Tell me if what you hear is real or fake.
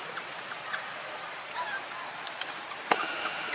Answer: fake